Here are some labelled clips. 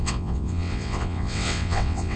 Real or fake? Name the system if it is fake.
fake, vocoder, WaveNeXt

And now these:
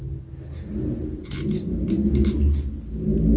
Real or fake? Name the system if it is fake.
real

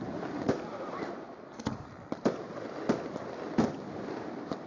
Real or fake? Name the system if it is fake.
real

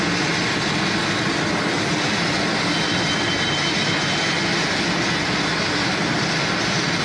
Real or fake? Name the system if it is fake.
real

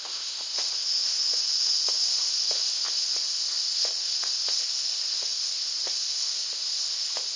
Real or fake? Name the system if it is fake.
fake, codec, ZipCodec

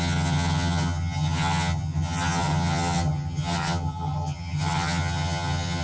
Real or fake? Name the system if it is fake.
fake, vocoder, HiFi-GAN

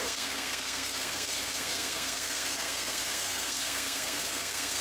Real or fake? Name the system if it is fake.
fake, codec, SNAC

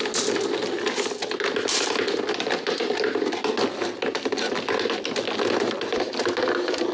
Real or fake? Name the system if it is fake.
real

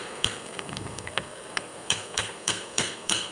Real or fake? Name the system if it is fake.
fake, codec, SNAC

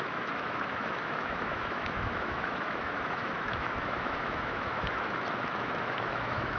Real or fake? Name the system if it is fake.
fake, autoencoder, DAC-VAE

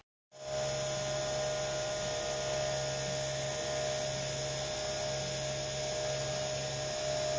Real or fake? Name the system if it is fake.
real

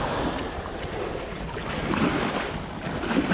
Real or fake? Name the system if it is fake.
real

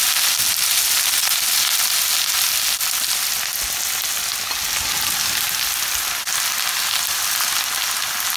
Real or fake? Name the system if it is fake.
real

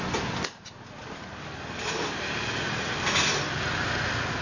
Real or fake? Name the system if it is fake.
real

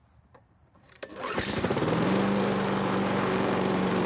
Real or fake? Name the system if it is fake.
fake, vocoder, BigVGAN v2